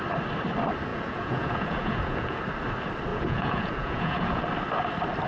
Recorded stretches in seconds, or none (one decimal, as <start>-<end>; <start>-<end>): 0.0-0.9; 2.4-3.1; 4.4-5.3